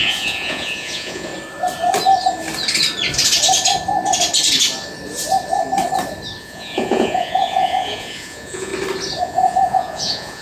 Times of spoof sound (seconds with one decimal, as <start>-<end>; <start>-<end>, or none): 0.0-1.3; 6.4-8.7; 9.2-10.4